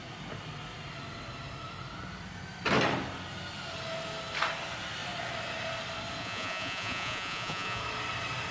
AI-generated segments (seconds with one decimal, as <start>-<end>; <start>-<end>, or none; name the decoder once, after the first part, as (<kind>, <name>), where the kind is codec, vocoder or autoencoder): 6.2-7.8 (vocoder, Vocos)